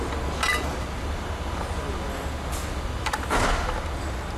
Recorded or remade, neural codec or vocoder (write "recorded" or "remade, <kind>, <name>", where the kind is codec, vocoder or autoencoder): recorded